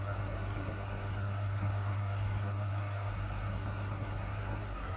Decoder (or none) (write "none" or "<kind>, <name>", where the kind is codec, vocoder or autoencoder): codec, SNAC